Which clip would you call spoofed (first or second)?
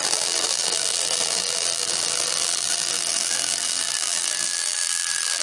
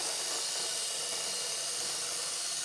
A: first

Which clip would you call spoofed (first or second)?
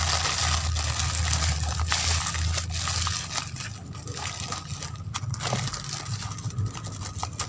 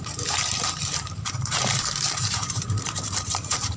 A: second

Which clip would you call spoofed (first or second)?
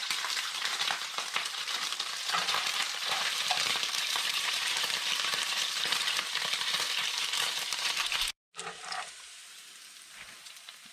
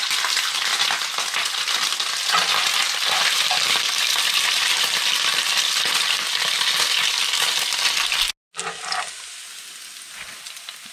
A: first